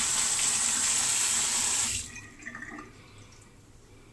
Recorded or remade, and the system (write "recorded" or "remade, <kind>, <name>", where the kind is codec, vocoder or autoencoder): recorded